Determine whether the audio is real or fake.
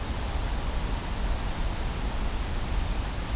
real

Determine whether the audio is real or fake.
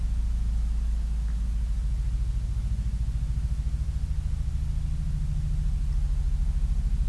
real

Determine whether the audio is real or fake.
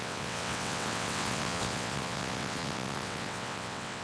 fake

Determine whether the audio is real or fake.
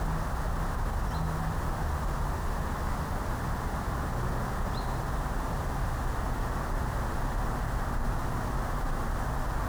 real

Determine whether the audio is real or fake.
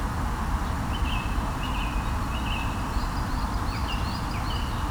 real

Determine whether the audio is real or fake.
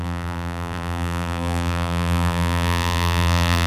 fake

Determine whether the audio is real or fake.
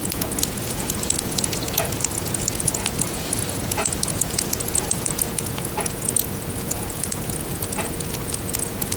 fake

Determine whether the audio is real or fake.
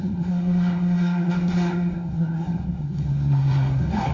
fake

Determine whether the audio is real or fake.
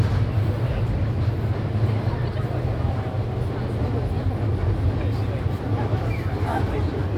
real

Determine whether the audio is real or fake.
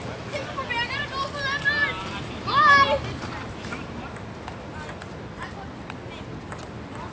real